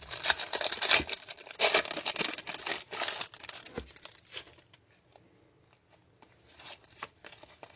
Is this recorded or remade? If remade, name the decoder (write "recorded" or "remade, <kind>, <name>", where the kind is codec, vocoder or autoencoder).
recorded